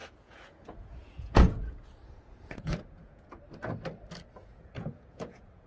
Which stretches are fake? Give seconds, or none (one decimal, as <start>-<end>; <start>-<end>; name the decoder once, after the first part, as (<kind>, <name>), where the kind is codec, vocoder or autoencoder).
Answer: 0.0-3.4 (vocoder, Vocos); 4.4-5.7